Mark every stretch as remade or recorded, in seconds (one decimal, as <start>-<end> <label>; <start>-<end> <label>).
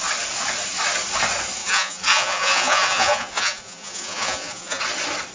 0.0-1.6 recorded; 1.6-4.8 remade; 4.8-5.3 recorded